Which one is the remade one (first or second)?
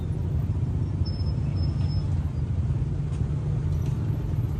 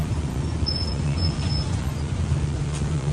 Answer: second